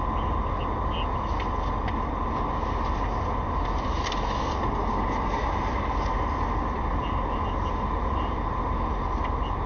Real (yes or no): yes